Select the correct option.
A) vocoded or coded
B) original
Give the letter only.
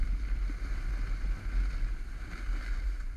B